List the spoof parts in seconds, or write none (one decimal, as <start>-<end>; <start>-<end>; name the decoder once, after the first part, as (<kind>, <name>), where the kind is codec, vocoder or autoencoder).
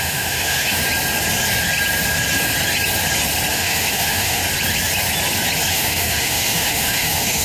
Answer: 0.0-0.8 (autoencoder, DAC-VAE); 3.5-4.4; 5.7-7.4